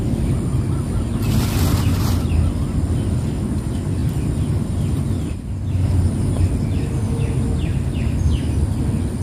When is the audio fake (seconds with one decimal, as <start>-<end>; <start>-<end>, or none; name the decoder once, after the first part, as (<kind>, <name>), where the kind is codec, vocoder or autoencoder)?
4.0-6.0 (vocoder, BigVGAN v2)